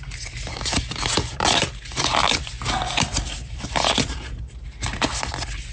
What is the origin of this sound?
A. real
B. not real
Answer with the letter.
A